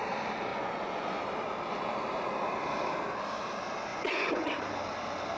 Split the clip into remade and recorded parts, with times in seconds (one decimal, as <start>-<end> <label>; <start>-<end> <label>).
0.0-0.5 recorded; 0.5-1.2 remade; 1.2-3.9 recorded; 3.9-4.5 remade; 4.5-5.4 recorded